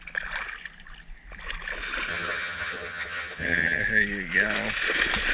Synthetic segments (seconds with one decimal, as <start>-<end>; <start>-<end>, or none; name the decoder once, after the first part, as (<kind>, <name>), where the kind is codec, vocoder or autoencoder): 2.1-3.8 (vocoder, HiFi-GAN)